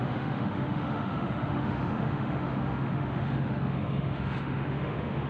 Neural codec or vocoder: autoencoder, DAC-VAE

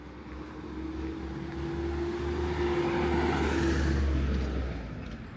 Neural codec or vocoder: none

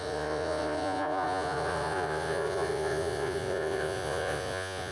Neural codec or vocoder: vocoder, Vocos